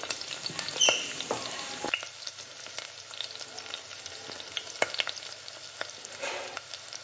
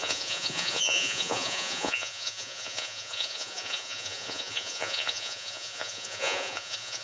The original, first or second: first